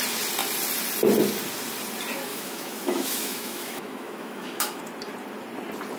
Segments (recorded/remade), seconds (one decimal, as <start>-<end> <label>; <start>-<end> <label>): 0.0-2.3 recorded; 2.3-4.8 remade; 4.8-6.0 recorded